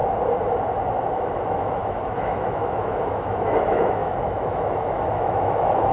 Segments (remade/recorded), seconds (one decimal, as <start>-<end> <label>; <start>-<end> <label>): 0.0-1.1 recorded; 1.1-5.9 remade